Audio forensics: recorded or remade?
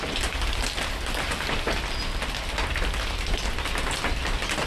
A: recorded